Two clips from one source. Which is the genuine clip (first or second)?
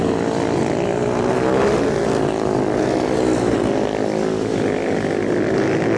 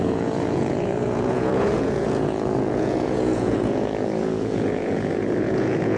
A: first